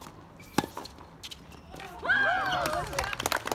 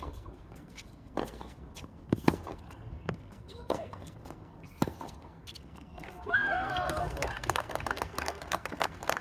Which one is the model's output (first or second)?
second